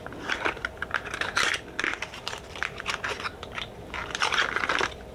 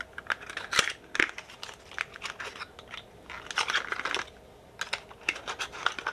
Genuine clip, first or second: second